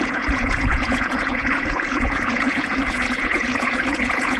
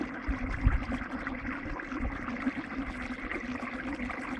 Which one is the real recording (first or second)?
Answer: second